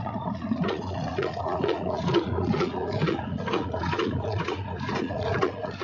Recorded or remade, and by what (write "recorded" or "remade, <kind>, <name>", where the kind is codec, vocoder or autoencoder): remade, vocoder, Vocos